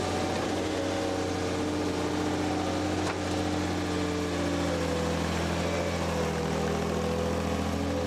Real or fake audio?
real